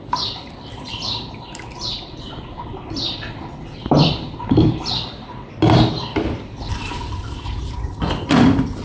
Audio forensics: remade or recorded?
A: remade